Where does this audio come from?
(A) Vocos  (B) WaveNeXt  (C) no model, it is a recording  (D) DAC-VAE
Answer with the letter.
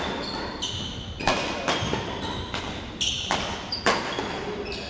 C